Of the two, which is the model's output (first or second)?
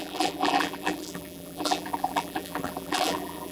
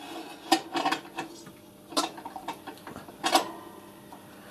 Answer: first